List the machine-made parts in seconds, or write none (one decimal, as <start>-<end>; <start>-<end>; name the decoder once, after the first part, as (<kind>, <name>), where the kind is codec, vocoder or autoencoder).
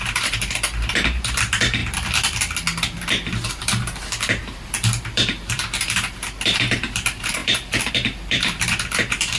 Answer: 0.0-1.8 (vocoder, BigVGAN v2); 3.5-9.4